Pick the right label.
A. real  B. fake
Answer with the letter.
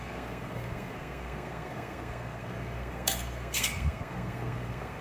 B